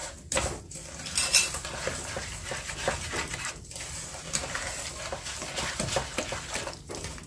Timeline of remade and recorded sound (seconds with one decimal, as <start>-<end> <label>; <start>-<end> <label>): 0.0-1.2 recorded; 1.2-4.9 remade; 4.9-7.3 recorded